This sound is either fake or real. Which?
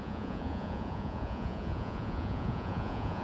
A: fake